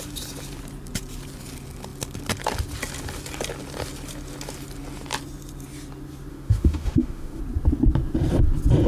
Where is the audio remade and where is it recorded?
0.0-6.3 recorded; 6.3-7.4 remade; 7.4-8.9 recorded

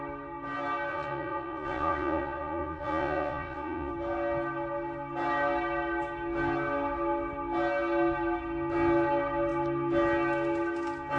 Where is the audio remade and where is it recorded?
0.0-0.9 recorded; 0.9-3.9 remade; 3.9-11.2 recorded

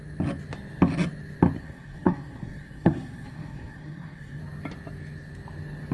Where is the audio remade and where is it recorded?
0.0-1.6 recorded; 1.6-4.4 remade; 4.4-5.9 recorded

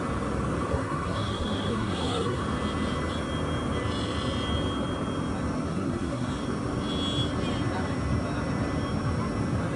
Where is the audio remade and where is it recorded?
0.0-0.7 recorded; 0.7-2.4 remade; 2.4-5.7 recorded; 5.7-6.3 remade; 6.3-9.8 recorded

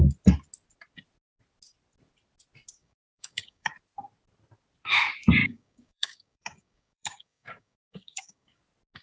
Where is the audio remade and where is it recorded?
0.0-2.8 recorded; 2.8-3.7 remade; 3.7-5.4 recorded; 5.4-8.6 remade; 8.6-9.0 recorded

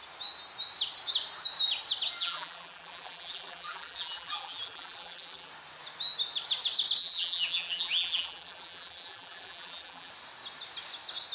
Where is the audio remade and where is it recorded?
0.0-2.2 recorded; 2.2-5.5 remade; 5.5-7.0 recorded; 7.0-10.1 remade; 10.1-11.3 recorded

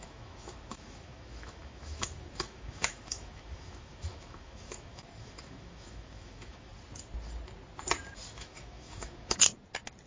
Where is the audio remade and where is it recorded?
0.0-6.7 remade; 6.7-8.3 recorded; 8.3-9.5 remade; 9.5-10.1 recorded

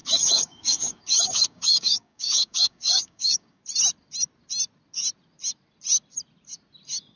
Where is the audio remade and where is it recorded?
0.0-3.6 remade; 3.6-7.2 recorded